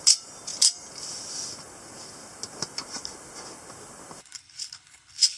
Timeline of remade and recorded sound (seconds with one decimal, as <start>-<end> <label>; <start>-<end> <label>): 0.0-4.2 recorded; 4.2-5.4 remade